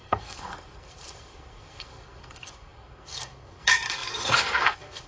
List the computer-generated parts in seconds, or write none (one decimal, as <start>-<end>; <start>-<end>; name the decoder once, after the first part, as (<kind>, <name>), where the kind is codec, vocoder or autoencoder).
0.0-5.1 (codec, SNAC)